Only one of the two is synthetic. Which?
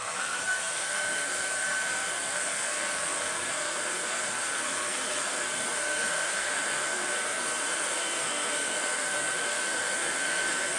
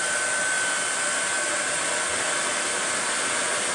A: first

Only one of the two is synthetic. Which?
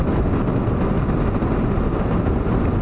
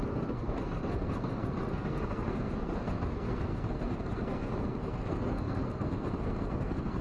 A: second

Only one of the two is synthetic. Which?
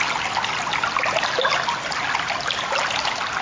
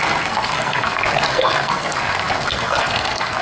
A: second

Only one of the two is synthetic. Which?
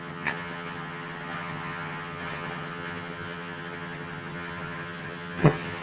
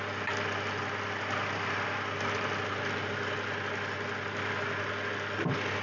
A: first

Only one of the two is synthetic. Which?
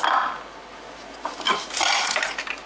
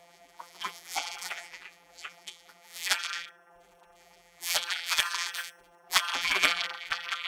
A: second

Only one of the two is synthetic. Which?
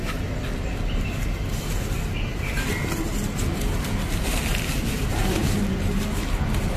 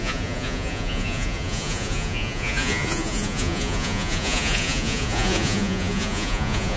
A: second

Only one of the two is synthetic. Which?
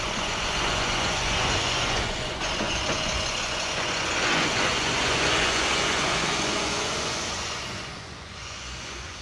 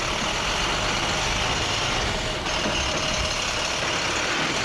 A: first